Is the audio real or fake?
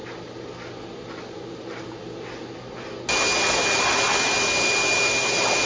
real